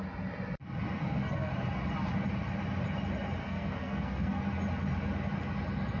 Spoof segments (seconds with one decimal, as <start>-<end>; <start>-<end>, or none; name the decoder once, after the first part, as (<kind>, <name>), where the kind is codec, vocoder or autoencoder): 1.0-1.5 (codec, SNAC); 3.4-4.4